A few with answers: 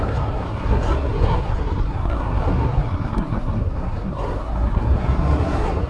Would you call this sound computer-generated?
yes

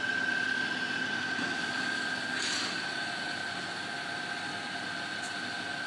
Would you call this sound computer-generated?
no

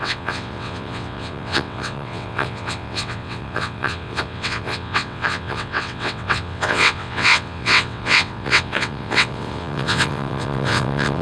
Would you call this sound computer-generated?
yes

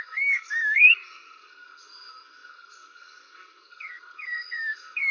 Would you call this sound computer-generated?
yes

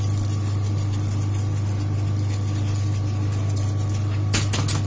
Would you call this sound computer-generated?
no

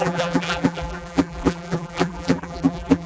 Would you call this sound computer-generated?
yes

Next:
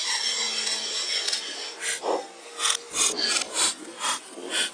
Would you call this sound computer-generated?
no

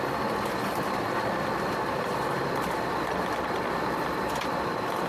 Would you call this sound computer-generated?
no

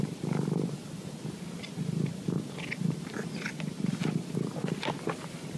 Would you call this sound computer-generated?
no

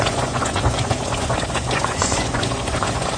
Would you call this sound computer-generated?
yes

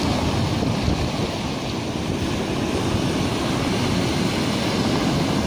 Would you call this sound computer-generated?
no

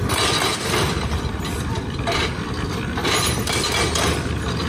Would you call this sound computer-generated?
no